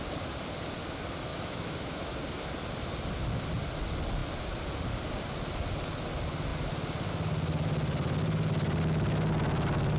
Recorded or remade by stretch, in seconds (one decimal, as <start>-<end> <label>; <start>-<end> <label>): 0.0-1.3 recorded; 1.3-2.1 remade; 2.1-10.0 recorded